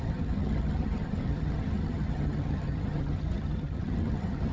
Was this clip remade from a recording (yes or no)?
yes